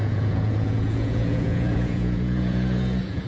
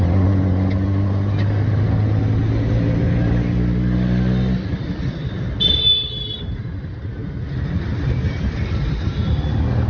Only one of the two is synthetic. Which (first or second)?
first